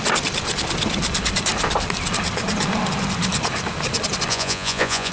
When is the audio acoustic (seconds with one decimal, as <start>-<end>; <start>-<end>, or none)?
0.0-4.3